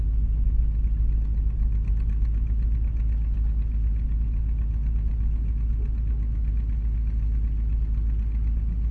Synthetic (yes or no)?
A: no